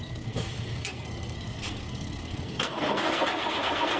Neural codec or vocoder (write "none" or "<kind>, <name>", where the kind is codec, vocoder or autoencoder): codec, SNAC